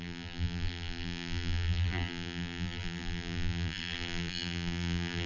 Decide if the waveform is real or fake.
fake